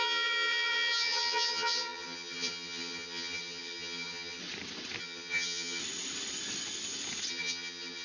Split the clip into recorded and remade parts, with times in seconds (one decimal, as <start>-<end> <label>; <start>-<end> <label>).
0.0-4.4 remade; 4.4-5.0 recorded; 5.0-5.8 remade; 5.8-7.3 recorded; 7.3-8.0 remade